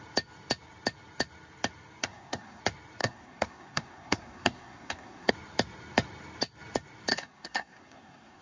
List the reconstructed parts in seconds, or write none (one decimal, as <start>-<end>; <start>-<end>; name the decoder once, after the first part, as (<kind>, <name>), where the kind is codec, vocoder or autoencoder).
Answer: 2.0-2.6 (codec, SNAC); 3.0-5.3; 7.1-8.4